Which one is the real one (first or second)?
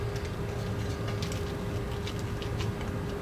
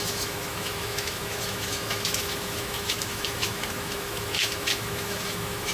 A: first